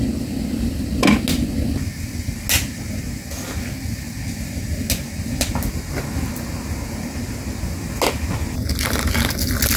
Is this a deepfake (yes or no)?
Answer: no